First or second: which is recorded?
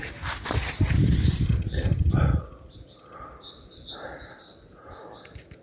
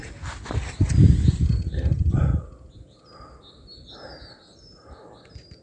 second